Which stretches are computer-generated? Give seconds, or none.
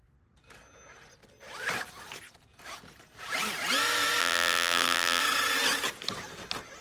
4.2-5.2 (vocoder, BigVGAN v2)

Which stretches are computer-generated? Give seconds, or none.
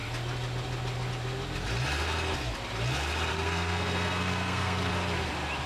3.3-4.9 (codec, SNAC)